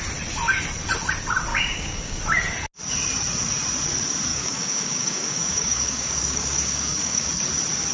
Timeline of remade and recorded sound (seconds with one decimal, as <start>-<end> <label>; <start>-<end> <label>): 0.0-1.5 recorded; 1.5-2.2 remade; 2.2-4.3 recorded; 4.3-7.3 remade; 7.3-7.9 recorded